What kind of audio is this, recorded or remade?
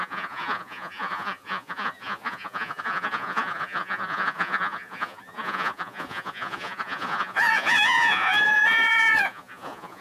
remade